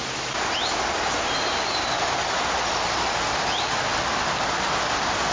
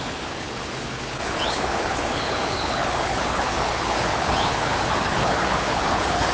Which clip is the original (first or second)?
first